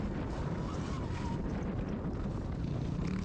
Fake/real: real